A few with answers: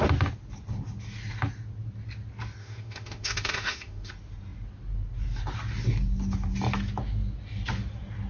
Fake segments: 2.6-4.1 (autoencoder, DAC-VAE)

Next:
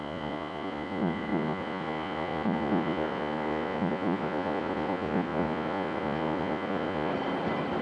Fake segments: 0.0-7.1 (vocoder, Vocos)

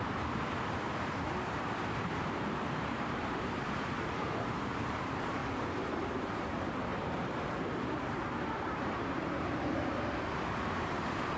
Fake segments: 0.0-5.4 (vocoder, BigVGAN v2); 6.1-11.4

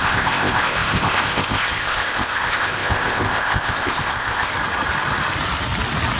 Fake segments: 0.0-4.5 (codec, ZipCodec)

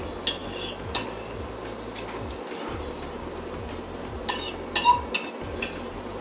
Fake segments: none